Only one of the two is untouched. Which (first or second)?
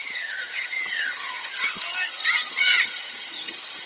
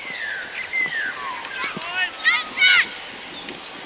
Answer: second